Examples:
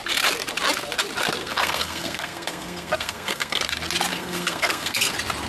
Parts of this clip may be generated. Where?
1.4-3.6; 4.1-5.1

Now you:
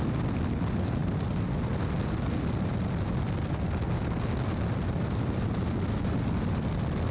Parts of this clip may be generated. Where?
none

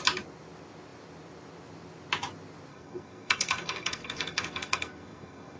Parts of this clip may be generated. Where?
2.7-5.6